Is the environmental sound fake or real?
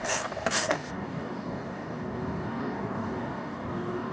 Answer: fake